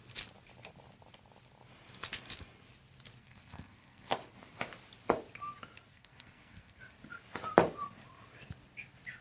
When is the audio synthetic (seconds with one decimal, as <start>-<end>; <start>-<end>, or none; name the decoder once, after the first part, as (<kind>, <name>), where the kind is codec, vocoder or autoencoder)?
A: 3.2-4.2 (codec, SNAC); 5.9-6.8